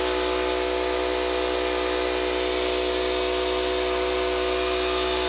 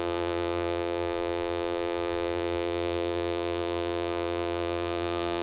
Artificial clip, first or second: second